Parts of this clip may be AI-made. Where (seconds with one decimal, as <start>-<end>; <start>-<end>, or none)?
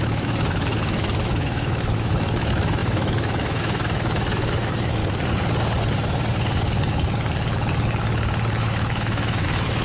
0.0-5.0; 8.6-9.8